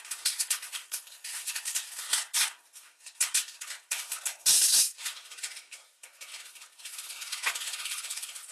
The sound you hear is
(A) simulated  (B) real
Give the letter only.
A